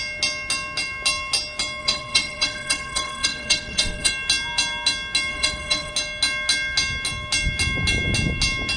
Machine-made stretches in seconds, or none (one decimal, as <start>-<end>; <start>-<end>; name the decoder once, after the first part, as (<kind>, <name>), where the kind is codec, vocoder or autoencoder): 1.8-4.1 (vocoder, WaveNeXt); 5.3-5.9